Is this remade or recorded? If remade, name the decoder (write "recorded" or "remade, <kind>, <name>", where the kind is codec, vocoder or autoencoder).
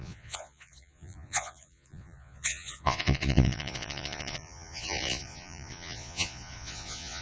remade, vocoder, Vocos